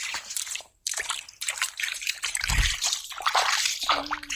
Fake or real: fake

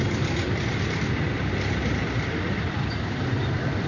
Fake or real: fake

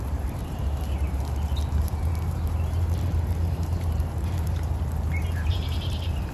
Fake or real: fake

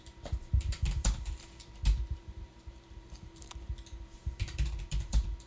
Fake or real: fake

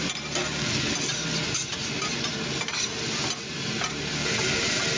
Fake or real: real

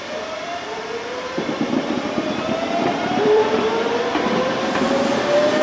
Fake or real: fake